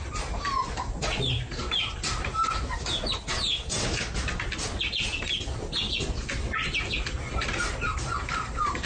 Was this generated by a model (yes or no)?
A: no